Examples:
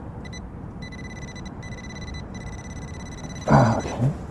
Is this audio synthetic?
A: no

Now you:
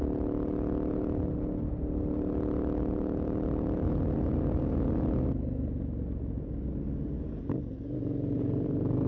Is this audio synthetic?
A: no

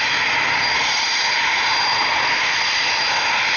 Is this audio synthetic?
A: no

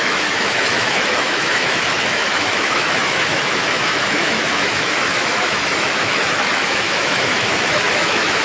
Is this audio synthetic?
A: yes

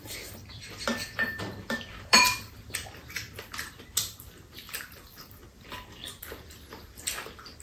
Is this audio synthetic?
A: yes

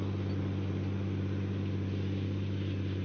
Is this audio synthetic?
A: no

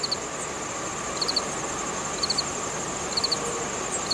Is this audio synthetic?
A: no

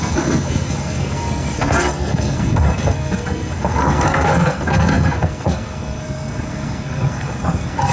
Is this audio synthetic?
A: yes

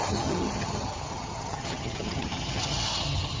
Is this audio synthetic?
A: yes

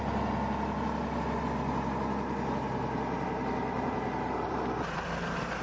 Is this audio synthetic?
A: no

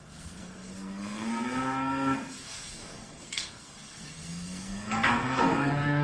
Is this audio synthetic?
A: yes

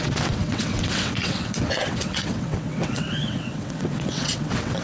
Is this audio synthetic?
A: yes